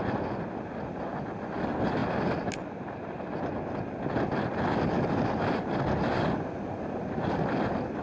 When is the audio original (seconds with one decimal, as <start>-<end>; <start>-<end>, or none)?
0.0-8.0